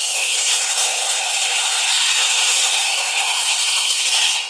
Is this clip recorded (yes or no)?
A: no